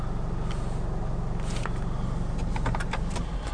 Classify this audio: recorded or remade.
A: recorded